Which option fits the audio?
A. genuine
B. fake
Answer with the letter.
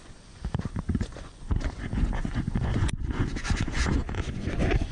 B